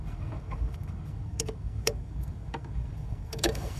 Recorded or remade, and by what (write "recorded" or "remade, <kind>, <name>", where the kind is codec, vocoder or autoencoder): remade, codec, SNAC